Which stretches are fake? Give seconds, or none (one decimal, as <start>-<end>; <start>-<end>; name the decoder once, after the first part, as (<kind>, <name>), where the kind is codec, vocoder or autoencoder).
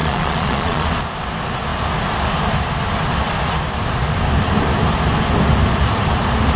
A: 0.0-0.9 (vocoder, Vocos)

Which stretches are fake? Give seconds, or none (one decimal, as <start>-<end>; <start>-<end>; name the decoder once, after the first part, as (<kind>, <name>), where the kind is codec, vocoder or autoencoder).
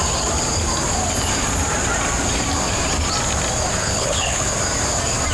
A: 3.8-4.5 (codec, HILCodec)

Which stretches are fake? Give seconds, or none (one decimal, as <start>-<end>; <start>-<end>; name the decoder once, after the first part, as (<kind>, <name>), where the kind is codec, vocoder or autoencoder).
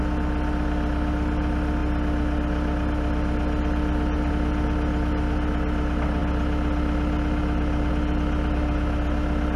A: none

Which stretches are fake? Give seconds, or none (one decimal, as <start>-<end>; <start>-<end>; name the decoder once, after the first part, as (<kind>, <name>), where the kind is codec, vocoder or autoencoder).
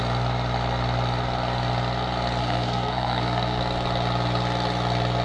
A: 2.4-3.6 (codec, SNAC)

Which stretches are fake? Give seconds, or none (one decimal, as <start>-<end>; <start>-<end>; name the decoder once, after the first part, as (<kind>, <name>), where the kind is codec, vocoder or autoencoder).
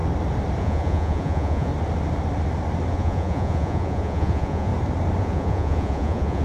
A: 0.6-1.7 (vocoder, Vocos); 2.9-4.7; 5.2-6.4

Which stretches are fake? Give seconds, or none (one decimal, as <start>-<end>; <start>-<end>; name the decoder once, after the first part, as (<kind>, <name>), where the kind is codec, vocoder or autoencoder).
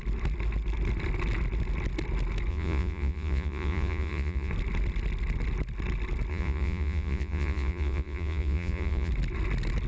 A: 2.5-4.5 (vocoder, Vocos); 6.3-9.1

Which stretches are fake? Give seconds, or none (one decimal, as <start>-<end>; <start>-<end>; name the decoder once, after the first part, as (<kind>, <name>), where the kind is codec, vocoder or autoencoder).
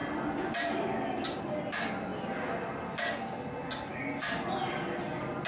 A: none